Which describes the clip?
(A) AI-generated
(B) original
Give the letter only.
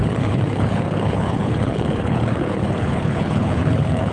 A